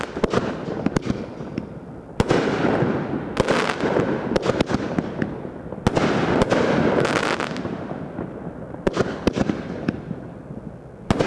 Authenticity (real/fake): real